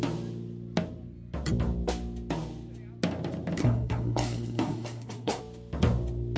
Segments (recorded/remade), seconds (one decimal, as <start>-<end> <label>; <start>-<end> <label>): 0.0-3.6 recorded; 3.6-5.4 remade; 5.4-6.4 recorded